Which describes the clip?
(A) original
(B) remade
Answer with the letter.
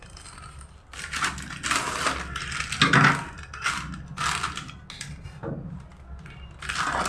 A